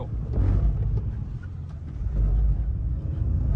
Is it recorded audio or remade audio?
recorded